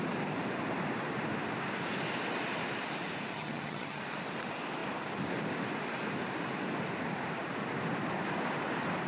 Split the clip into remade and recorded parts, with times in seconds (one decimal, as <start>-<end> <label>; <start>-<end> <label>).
0.0-3.3 recorded; 3.3-4.0 remade; 4.0-9.1 recorded